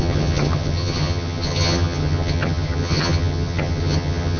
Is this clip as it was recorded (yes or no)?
no